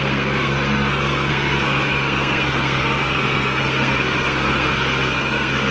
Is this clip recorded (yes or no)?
no